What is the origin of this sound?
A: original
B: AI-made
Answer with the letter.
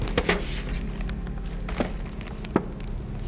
A